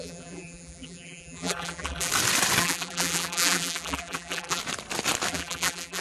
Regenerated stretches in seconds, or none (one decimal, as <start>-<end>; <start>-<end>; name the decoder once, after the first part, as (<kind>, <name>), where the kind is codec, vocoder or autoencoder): 0.0-2.1 (vocoder, BigVGAN v2); 2.6-4.6; 5.3-6.0

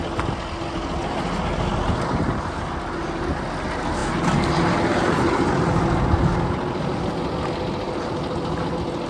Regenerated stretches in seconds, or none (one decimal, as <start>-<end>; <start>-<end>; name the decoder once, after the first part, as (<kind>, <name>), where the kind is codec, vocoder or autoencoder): 1.0-1.7 (vocoder, BigVGAN v2)

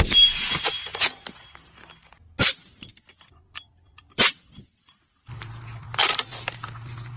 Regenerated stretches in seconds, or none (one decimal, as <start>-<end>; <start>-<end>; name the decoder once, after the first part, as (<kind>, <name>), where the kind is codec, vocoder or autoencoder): 2.9-7.2 (vocoder, BigVGAN v2)

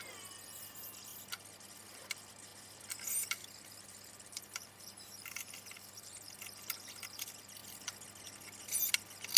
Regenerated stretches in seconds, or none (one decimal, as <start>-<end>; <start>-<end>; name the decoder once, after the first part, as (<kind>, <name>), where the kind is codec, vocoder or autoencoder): 3.4-6.4 (vocoder, BigVGAN v2)

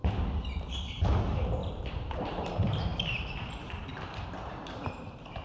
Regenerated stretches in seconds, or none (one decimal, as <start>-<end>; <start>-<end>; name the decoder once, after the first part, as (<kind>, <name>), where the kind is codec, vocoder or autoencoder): 1.6-3.5 (vocoder, BigVGAN v2); 3.9-4.9

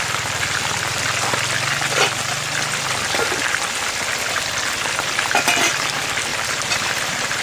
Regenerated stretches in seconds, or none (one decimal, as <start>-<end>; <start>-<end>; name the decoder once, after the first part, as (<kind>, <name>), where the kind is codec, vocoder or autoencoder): 6.3-7.4 (vocoder, BigVGAN v2)

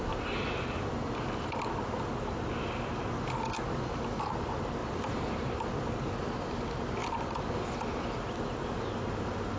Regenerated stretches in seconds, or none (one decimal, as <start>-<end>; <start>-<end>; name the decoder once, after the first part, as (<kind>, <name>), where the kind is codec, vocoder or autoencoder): 0.0-1.4 (vocoder, BigVGAN v2); 4.8-5.9